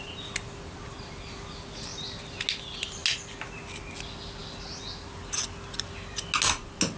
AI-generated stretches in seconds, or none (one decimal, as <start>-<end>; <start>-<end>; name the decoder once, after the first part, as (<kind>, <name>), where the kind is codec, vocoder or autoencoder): none